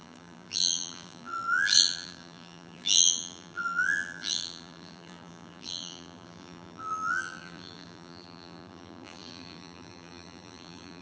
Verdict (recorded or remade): remade